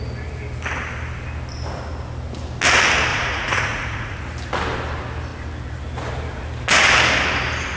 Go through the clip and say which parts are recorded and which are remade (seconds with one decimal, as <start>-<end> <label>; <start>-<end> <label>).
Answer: 0.0-3.1 recorded; 3.1-4.2 remade; 4.2-7.8 recorded